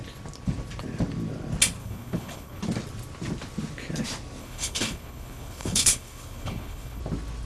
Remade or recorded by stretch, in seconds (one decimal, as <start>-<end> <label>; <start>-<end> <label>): 0.0-1.8 recorded; 1.8-2.6 remade; 2.6-4.4 recorded; 4.4-7.0 remade; 7.0-7.5 recorded